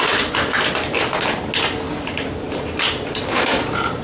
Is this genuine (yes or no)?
yes